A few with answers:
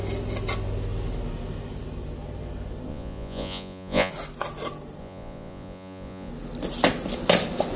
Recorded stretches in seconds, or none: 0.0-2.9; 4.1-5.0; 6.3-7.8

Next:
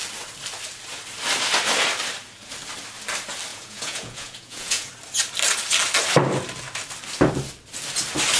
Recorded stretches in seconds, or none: 0.0-3.5; 4.9-8.4